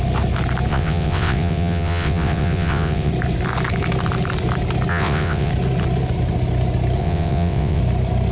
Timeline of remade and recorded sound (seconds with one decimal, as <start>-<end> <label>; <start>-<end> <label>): 0.0-0.7 recorded; 0.7-3.1 remade; 3.1-4.9 recorded; 4.9-5.5 remade; 5.5-7.0 recorded; 7.0-7.8 remade; 7.8-8.3 recorded